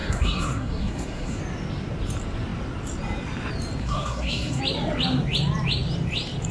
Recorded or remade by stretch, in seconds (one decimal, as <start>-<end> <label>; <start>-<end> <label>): 0.0-1.4 remade; 1.4-3.8 recorded; 3.8-4.6 remade; 4.6-6.5 recorded